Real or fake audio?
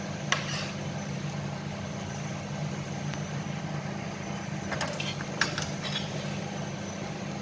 real